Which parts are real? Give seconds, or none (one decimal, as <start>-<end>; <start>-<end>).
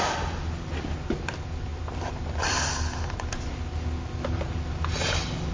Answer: 0.0-5.5